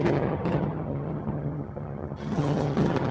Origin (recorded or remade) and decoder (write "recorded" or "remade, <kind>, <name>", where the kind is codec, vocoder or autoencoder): remade, vocoder, HiFi-GAN